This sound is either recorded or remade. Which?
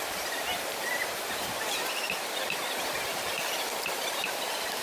recorded